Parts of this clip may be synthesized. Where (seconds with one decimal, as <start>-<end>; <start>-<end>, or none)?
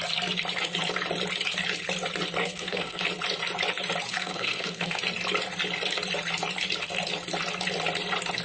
2.4-3.0; 4.1-5.0